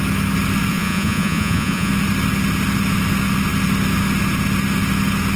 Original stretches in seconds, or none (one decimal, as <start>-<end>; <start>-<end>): 0.0-0.7; 1.9-5.4